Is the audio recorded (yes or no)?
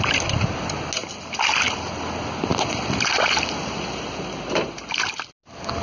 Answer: yes